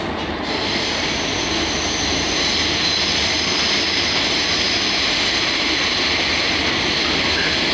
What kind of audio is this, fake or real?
real